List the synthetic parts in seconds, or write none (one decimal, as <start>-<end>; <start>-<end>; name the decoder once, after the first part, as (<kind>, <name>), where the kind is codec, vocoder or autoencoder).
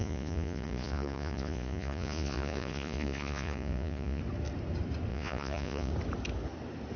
0.0-4.2 (vocoder, Vocos); 5.1-5.9